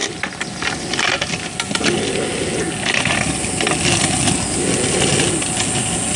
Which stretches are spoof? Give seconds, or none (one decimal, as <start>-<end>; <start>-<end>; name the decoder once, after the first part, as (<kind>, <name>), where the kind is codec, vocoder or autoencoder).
none